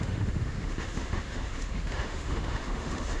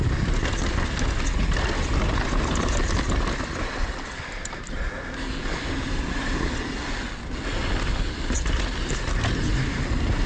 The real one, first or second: second